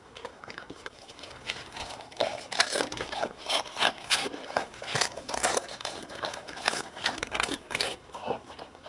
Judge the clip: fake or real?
fake